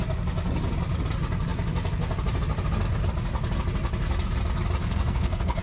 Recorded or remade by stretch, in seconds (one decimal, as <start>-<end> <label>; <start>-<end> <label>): 0.0-4.8 recorded; 4.8-5.6 remade